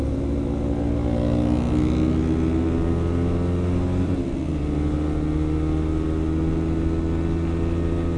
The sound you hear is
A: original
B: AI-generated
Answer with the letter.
A